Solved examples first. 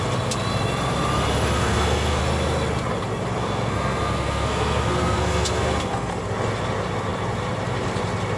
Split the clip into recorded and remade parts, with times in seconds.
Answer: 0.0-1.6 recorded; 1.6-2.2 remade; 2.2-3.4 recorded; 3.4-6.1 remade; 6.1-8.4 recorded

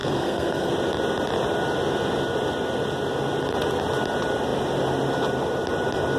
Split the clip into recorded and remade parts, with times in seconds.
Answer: 0.0-0.7 remade; 0.7-6.2 recorded

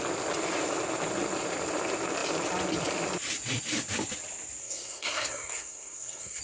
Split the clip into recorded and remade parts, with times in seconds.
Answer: 0.0-4.6 recorded; 4.6-6.4 remade

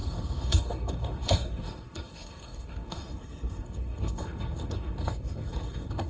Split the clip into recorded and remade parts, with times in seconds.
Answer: 0.0-6.1 remade

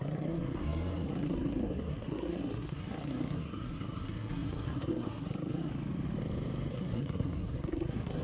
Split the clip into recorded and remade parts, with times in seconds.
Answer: 0.0-5.7 remade; 5.7-6.7 recorded; 6.7-8.2 remade

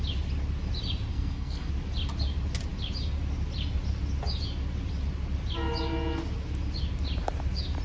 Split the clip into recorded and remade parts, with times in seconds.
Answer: 0.0-1.1 recorded; 1.1-1.7 remade; 1.7-7.8 recorded

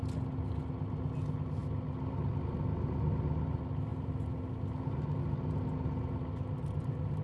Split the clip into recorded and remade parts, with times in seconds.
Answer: 0.0-7.2 recorded